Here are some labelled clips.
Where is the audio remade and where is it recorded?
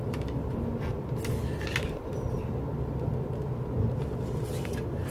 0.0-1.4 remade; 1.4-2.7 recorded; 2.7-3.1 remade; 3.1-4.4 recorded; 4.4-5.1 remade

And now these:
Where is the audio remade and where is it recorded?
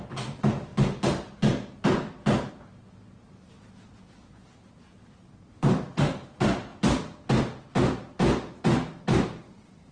0.0-9.9 recorded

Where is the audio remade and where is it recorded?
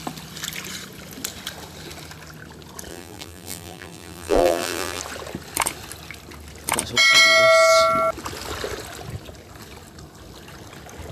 0.0-2.9 recorded; 2.9-5.0 remade; 5.0-11.1 recorded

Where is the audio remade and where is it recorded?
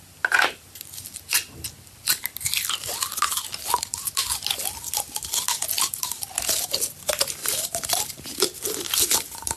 0.0-7.4 recorded; 7.4-8.6 remade; 8.6-9.6 recorded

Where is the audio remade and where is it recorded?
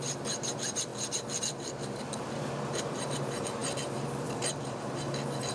0.0-0.9 remade; 0.9-1.4 recorded; 1.4-5.5 remade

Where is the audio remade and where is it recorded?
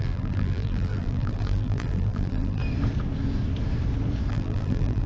0.0-2.6 remade; 2.6-4.3 recorded; 4.3-5.1 remade